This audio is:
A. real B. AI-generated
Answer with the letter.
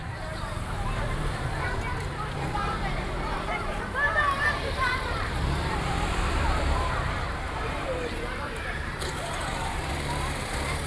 B